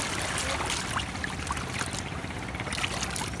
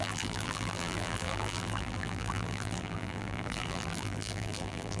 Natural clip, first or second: first